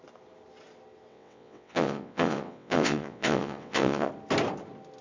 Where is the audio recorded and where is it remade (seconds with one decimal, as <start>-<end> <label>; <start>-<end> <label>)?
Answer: 0.0-1.1 recorded; 1.1-4.1 remade; 4.1-5.0 recorded